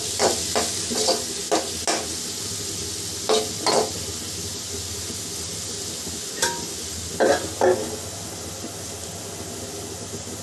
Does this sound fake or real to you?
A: real